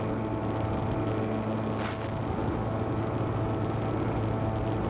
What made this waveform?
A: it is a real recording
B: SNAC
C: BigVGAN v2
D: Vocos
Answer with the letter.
A